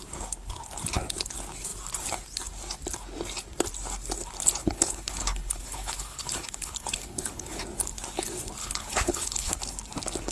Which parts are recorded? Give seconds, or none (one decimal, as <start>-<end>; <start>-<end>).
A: 0.0-4.6; 7.6-8.6; 9.5-10.3